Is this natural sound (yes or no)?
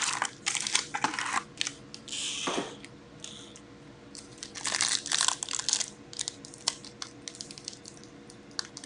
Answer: yes